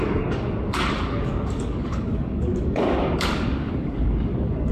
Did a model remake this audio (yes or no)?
yes